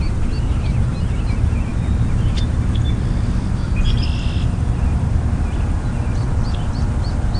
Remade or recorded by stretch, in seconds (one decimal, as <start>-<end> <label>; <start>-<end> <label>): 0.0-7.4 recorded